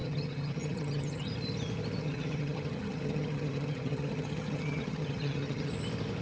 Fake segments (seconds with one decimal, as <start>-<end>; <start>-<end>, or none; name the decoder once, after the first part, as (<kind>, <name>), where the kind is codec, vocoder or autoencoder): 0.0-1.3 (vocoder, HiFi-GAN); 2.0-5.7